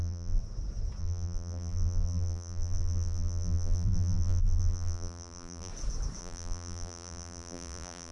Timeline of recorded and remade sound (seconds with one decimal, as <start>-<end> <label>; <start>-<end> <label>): 0.0-0.4 remade; 0.4-1.0 recorded; 1.0-5.7 remade; 5.7-6.2 recorded; 6.2-8.1 remade